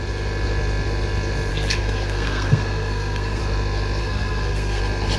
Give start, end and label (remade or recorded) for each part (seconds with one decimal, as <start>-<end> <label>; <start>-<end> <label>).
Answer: 0.0-1.5 recorded; 1.5-3.4 remade; 3.4-4.0 recorded; 4.0-4.8 remade; 4.8-5.2 recorded